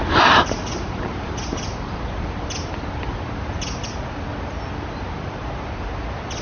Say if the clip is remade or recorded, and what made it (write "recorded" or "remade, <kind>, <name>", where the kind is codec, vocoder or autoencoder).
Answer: recorded